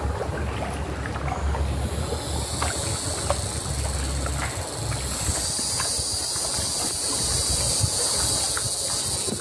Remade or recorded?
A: recorded